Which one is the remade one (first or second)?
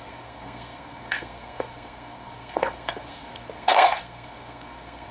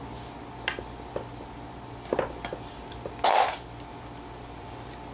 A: first